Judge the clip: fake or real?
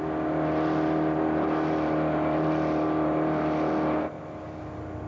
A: real